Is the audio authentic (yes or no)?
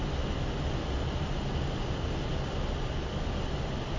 yes